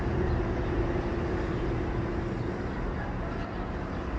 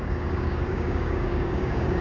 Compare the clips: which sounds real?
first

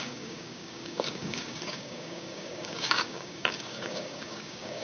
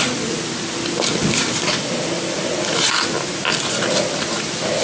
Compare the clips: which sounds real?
second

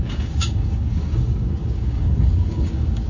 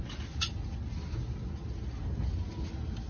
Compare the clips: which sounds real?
second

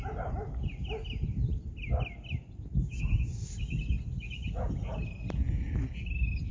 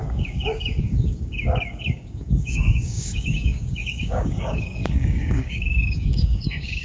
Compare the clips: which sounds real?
first